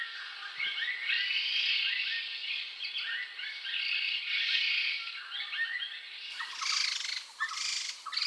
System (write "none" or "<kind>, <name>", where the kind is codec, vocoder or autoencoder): none